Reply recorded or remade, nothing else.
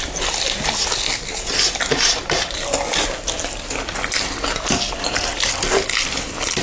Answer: recorded